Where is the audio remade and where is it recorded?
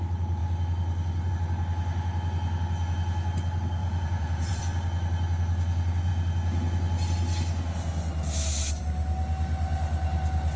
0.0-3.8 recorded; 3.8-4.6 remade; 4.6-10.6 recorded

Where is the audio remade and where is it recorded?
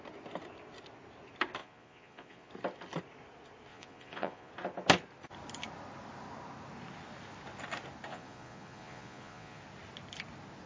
0.0-1.6 recorded; 1.6-2.5 remade; 2.5-3.7 recorded; 3.7-4.5 remade; 4.5-8.1 recorded; 8.1-9.6 remade; 9.6-10.7 recorded